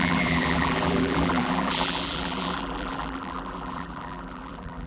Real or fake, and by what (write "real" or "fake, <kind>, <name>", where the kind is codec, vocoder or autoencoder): fake, vocoder, BigVGAN v2